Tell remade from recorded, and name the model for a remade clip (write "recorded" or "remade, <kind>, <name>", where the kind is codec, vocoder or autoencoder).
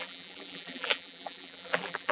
remade, vocoder, BigVGAN v2